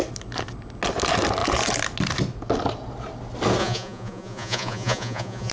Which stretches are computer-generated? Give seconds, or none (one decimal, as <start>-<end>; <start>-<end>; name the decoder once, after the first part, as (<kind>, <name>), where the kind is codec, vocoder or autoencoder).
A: 3.6-5.5 (vocoder, Vocos)